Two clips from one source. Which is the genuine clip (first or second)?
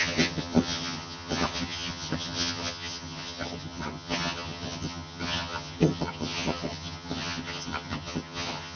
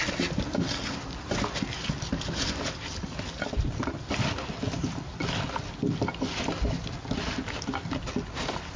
second